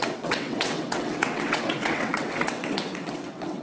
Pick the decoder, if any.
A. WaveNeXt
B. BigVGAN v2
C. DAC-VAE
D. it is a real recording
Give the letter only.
A